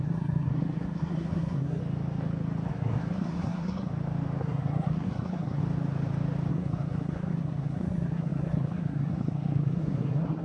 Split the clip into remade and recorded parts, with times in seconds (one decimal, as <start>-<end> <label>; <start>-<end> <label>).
0.0-1.8 remade; 1.8-2.7 recorded; 2.7-3.9 remade; 3.9-4.4 recorded; 4.4-5.6 remade; 5.6-6.5 recorded; 6.5-10.4 remade